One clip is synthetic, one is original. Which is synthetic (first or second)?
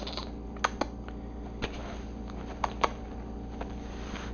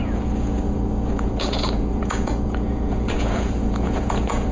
second